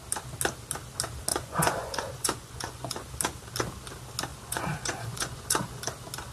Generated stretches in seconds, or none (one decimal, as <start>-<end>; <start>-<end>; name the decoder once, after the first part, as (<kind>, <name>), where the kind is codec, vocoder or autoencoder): 1.3-3.1 (vocoder, Vocos); 4.3-5.8